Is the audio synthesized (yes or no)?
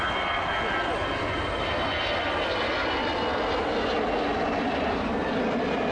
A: no